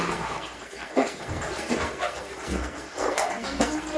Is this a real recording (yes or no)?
no